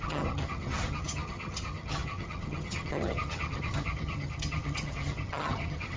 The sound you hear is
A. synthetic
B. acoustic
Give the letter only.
A